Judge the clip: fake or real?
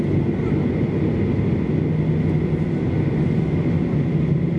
real